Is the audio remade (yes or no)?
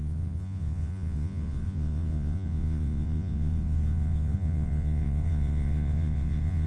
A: yes